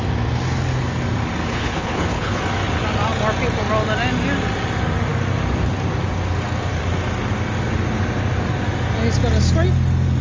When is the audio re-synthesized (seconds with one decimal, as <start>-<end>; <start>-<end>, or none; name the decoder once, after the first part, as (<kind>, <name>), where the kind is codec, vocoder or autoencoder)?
1.5-2.4 (codec, HILCodec)